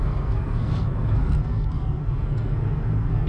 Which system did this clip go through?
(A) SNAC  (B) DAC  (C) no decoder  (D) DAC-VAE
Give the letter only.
A